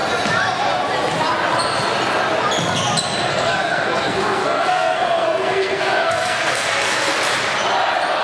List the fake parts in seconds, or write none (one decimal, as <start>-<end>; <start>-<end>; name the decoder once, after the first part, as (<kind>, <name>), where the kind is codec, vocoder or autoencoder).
3.3-7.1 (codec, SNAC)